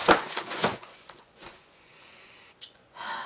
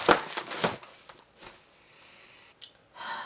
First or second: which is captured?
second